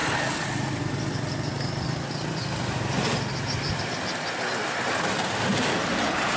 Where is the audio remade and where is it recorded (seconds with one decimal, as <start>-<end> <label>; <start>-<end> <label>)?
0.0-6.4 recorded